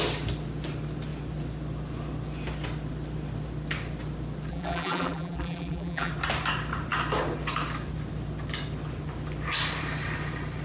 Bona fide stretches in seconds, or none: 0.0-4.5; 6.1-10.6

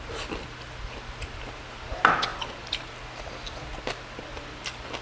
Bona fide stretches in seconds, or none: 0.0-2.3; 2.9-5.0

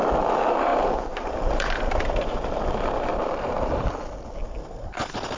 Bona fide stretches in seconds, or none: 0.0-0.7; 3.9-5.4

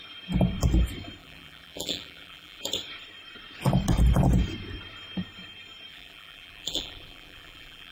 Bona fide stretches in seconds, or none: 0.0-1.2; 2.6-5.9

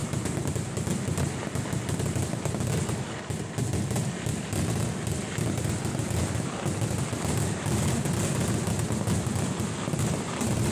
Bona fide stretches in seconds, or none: 0.0-10.7

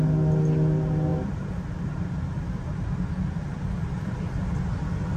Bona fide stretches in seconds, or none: 0.0-1.1; 4.2-5.2

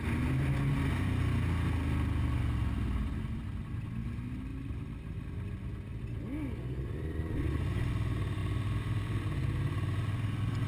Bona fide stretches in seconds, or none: 0.0-10.7